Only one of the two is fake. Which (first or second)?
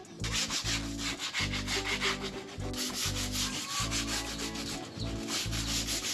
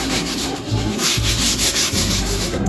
second